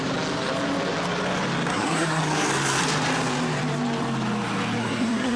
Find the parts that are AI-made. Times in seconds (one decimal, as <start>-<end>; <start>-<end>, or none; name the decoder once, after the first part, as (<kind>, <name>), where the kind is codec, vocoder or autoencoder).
1.7-2.2 (codec, SNAC); 4.8-5.4